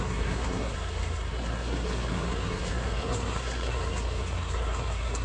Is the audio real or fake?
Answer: fake